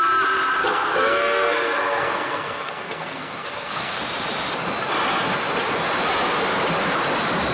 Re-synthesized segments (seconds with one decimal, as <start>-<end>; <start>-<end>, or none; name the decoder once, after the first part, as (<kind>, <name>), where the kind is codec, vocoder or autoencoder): 0.6-4.0 (codec, SNAC)